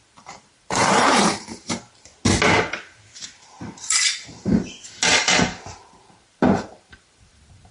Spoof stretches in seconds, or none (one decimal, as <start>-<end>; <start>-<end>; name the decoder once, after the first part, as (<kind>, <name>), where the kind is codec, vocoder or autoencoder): 0.0-2.1 (vocoder, BigVGAN v2); 2.6-4.5; 5.2-7.7